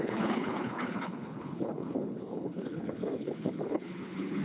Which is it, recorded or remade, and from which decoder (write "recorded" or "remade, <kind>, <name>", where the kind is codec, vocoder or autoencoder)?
remade, codec, HILCodec